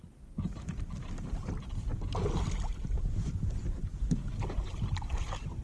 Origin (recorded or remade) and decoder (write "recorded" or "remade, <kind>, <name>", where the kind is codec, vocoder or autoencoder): recorded